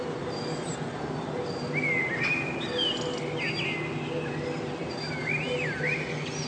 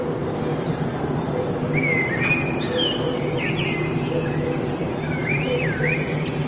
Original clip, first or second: first